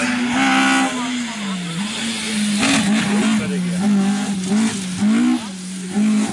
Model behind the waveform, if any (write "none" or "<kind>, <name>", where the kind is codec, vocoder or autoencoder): none